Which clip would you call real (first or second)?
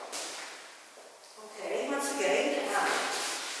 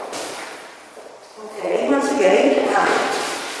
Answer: first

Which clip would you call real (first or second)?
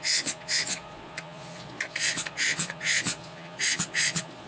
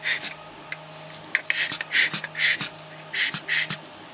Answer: second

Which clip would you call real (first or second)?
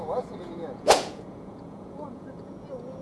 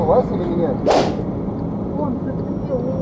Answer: second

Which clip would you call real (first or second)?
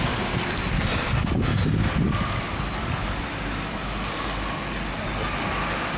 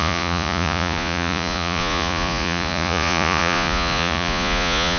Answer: first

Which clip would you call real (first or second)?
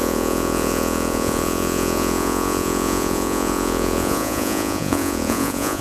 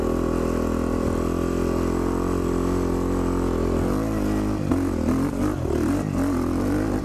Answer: second